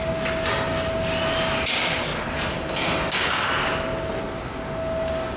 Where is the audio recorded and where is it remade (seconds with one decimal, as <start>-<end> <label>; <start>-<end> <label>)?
0.0-5.4 recorded